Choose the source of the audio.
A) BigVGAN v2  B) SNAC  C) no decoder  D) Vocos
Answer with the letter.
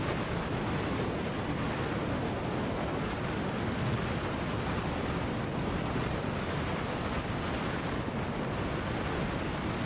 C